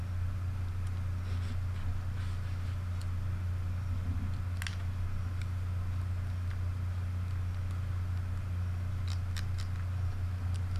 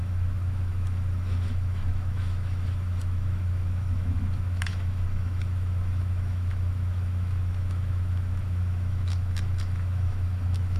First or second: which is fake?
second